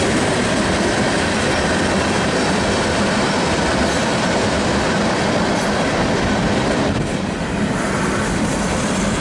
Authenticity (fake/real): fake